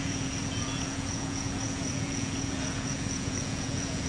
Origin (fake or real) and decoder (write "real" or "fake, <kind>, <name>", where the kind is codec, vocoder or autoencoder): fake, vocoder, Vocos